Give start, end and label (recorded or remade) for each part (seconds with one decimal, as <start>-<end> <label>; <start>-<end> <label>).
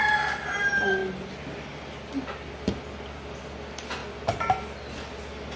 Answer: 0.0-5.6 recorded